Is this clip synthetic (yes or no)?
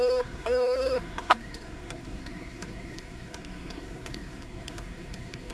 yes